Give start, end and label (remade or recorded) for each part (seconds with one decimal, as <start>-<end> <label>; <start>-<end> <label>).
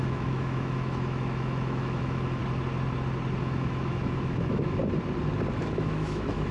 0.0-2.4 remade; 2.4-3.4 recorded; 3.4-4.8 remade; 4.8-5.6 recorded; 5.6-6.5 remade